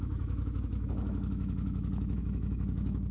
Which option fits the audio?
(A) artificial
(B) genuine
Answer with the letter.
A